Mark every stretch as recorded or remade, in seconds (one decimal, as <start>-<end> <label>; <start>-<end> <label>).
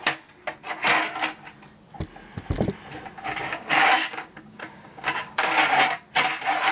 0.0-3.4 recorded; 3.4-5.5 remade; 5.5-6.7 recorded